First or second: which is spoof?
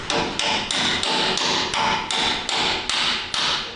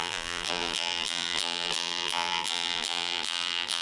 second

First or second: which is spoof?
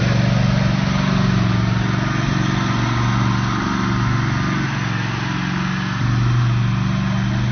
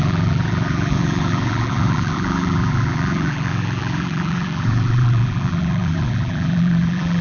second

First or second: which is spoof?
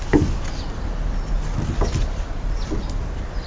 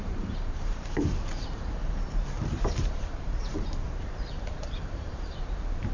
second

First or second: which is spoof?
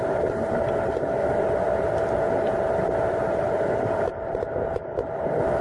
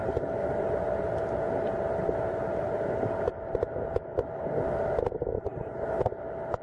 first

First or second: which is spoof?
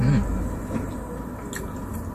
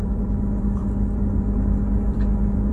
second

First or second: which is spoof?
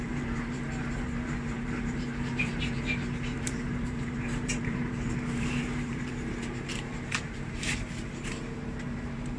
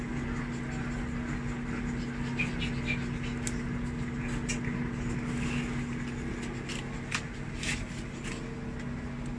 first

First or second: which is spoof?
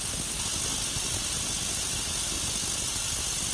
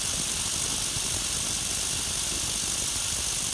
second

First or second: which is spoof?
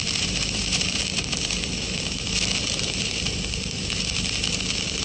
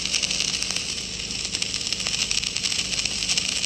first